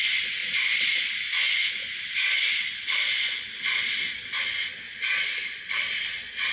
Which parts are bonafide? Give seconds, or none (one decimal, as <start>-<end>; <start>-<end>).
0.0-6.5